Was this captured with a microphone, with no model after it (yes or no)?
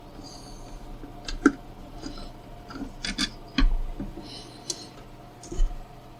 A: yes